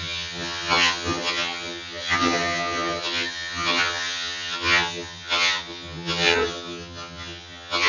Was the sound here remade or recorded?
remade